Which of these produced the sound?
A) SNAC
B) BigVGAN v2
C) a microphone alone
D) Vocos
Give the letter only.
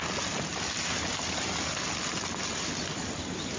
C